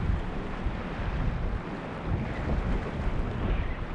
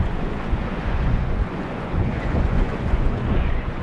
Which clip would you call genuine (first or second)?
first